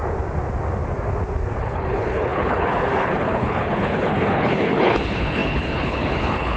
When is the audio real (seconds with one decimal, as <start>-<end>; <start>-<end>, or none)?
0.0-1.6